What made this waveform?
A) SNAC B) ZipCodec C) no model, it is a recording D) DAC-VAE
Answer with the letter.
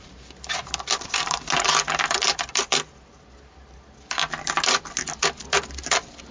C